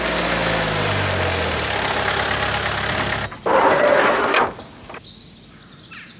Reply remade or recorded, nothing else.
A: recorded